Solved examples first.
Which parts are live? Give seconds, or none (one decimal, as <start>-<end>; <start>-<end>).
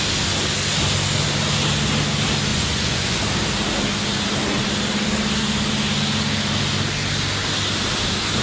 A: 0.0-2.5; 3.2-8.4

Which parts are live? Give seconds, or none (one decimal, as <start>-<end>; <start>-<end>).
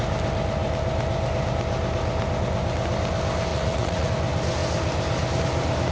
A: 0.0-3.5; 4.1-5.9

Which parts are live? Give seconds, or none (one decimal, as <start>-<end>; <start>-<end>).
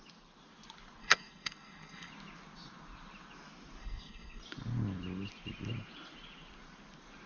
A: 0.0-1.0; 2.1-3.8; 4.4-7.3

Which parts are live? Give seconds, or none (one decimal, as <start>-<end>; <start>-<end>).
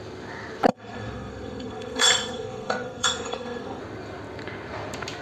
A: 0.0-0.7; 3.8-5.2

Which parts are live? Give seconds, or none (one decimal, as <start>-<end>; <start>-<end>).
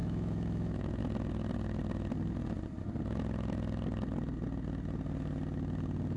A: 1.0-6.2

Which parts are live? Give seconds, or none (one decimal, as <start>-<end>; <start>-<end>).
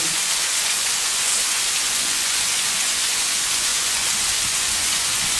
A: none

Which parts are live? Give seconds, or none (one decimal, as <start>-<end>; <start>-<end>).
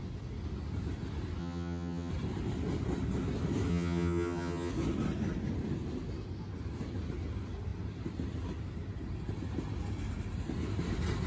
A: 0.0-1.4; 2.1-3.7; 4.7-11.3